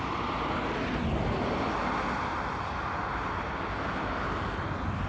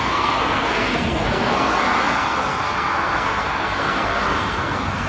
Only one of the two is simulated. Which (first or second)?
second